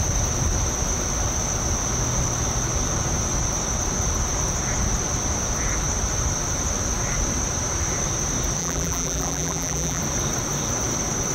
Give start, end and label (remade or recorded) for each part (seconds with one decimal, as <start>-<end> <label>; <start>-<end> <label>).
0.0-8.6 recorded; 8.6-10.0 remade; 10.0-11.3 recorded